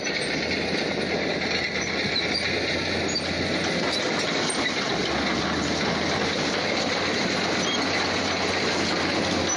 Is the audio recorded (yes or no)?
yes